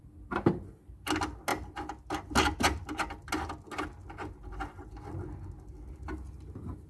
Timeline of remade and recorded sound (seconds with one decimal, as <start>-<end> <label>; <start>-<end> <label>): 0.0-6.9 recorded